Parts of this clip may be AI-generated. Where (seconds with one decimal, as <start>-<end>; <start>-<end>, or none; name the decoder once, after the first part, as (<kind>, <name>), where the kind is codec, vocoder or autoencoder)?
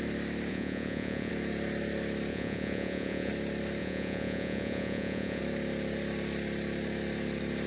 0.5-1.3 (vocoder, Vocos); 2.3-3.3; 3.8-5.4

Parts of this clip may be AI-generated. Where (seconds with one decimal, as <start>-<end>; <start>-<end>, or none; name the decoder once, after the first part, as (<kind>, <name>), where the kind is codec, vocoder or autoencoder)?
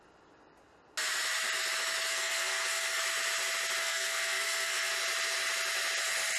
2.1-3.0 (codec, SNAC); 3.8-4.9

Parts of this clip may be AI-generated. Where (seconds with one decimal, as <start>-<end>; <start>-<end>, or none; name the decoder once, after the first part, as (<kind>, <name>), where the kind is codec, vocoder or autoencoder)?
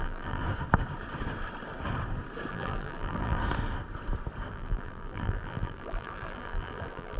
0.0-0.4 (vocoder, BigVGAN v2); 2.5-3.4; 4.5-7.2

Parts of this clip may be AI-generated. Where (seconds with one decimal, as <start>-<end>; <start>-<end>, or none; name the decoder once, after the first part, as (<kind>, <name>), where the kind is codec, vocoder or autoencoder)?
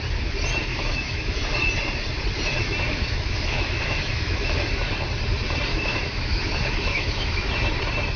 0.7-1.4 (autoencoder, DAC-VAE); 2.6-4.8; 5.7-7.4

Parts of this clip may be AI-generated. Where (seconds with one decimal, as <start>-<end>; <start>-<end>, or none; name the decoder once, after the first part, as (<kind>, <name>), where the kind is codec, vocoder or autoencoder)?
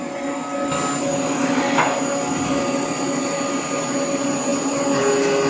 none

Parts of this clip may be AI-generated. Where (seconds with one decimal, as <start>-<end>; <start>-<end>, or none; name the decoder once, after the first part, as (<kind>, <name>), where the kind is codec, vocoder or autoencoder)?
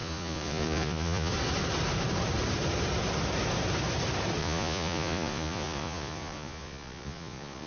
0.0-1.3 (vocoder, Vocos); 4.4-7.7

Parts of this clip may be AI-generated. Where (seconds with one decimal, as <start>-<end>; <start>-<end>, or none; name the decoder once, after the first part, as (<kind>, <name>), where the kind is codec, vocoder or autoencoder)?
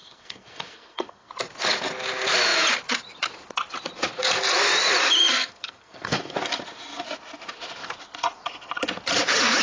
0.0-1.3 (codec, SNAC); 5.3-6.3